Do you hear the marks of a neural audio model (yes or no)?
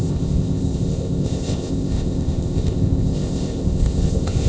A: yes